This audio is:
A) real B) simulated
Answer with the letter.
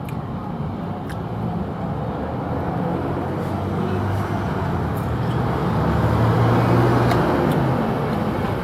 A